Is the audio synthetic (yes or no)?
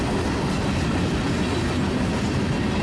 no